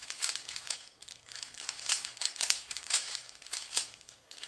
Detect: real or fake fake